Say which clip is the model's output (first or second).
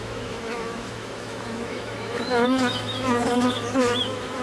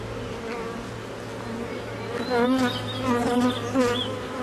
first